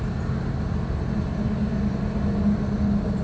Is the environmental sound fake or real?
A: real